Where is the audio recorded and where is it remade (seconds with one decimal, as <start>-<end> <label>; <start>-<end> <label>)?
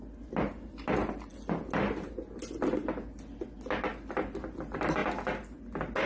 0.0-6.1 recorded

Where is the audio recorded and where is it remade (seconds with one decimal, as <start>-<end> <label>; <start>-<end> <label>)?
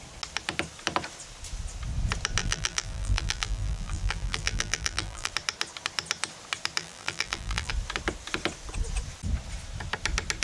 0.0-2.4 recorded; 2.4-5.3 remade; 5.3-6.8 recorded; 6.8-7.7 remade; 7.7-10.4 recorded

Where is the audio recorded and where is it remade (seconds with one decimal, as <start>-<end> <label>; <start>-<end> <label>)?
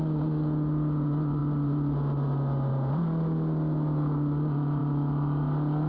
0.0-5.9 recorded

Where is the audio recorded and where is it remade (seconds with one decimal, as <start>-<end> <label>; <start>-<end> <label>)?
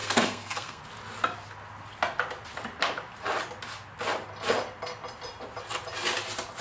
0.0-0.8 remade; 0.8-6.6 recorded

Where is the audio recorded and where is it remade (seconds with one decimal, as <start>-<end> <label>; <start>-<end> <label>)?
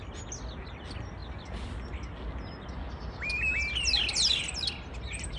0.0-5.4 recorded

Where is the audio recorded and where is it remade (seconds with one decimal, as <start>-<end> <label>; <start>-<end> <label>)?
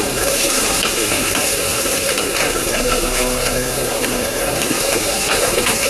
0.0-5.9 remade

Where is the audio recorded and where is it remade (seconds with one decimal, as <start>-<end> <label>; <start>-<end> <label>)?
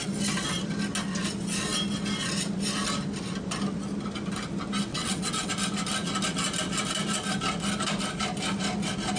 0.0-4.9 recorded; 4.9-5.5 remade; 5.5-9.2 recorded